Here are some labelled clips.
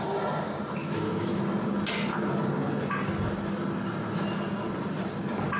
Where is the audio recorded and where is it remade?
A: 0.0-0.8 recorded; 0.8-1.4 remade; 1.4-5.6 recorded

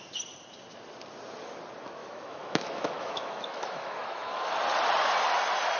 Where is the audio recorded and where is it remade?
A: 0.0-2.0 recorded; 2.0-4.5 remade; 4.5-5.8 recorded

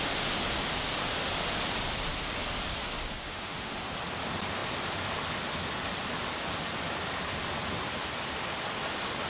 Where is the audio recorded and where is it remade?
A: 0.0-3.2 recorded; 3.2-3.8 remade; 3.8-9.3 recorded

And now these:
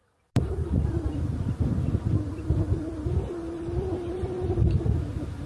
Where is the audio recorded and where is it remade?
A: 0.0-5.5 recorded